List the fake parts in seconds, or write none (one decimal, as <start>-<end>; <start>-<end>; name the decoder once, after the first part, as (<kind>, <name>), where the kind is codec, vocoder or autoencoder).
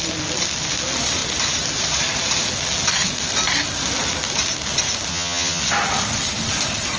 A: 5.1-5.6 (vocoder, HiFi-GAN)